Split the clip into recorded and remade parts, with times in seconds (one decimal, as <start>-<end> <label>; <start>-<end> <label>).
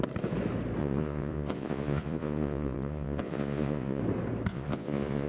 0.0-0.8 recorded; 0.8-4.0 remade; 4.0-4.5 recorded; 4.5-5.3 remade